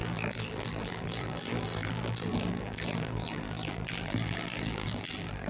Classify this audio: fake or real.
fake